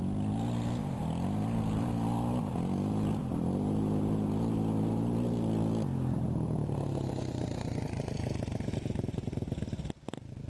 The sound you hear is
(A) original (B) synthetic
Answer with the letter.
A